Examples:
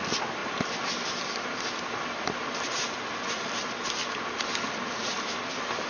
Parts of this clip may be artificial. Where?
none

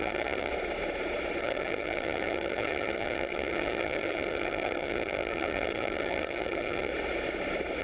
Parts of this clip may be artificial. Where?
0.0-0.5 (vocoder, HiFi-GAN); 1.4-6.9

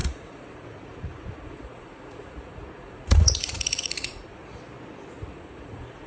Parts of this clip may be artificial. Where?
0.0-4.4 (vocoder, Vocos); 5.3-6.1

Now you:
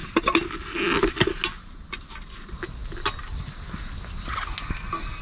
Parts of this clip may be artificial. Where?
2.2-2.8 (vocoder, BigVGAN v2)